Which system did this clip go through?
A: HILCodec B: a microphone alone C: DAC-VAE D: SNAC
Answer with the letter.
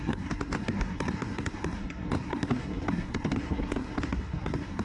D